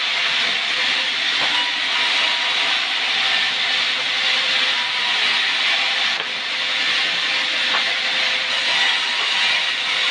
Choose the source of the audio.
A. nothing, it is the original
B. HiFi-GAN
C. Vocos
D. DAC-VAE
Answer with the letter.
A